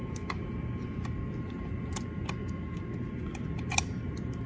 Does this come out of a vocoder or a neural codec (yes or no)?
no